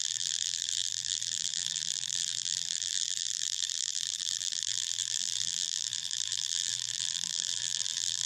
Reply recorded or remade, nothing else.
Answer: remade